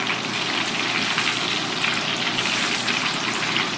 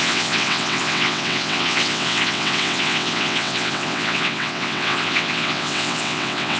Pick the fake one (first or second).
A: second